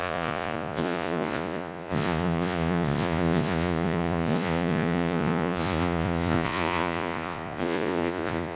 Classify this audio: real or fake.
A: fake